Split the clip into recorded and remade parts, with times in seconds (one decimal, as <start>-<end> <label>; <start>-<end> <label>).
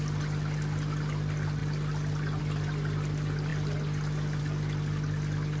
0.0-5.6 recorded